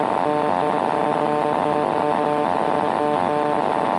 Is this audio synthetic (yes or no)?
no